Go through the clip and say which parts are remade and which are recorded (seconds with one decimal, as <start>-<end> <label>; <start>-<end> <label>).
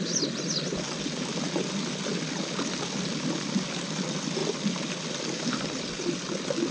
0.0-6.7 recorded